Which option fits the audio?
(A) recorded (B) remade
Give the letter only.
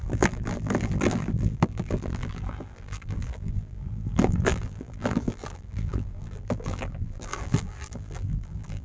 B